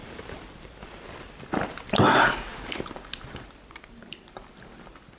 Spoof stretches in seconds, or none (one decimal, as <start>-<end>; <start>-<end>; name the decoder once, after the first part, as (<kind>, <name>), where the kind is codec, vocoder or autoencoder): 0.0-2.0 (vocoder, BigVGAN v2); 2.5-3.8